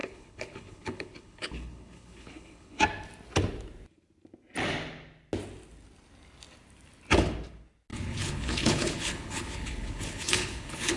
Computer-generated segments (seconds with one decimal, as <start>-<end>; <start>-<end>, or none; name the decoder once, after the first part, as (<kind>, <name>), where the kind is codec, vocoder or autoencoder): 0.0-2.8 (codec, HILCodec); 7.9-11.0